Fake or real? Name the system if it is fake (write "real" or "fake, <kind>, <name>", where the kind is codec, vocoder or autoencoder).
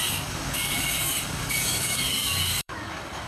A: fake, codec, DAC